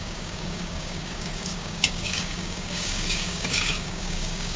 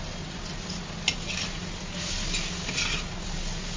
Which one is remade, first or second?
first